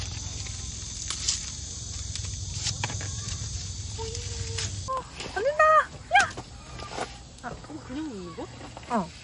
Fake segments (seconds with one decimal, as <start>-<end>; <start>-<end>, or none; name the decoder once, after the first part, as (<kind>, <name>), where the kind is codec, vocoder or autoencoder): 1.4-4.1 (vocoder, BigVGAN v2)